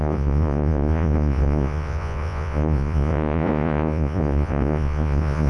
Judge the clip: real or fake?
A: fake